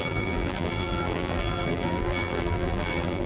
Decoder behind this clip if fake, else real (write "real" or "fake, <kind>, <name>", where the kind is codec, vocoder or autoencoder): fake, vocoder, BigVGAN v2